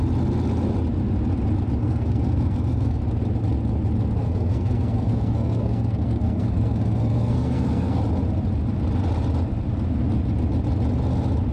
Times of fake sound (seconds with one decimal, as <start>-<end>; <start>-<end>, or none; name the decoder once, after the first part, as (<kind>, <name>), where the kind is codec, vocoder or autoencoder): 1.8-3.0 (codec, SNAC); 4.2-8.0